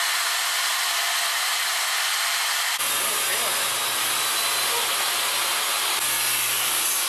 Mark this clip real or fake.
real